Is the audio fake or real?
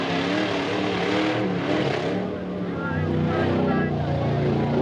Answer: real